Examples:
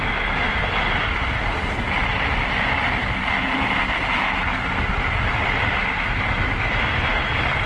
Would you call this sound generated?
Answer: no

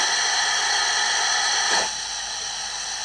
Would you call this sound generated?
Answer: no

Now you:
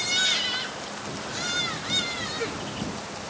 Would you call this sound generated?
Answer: no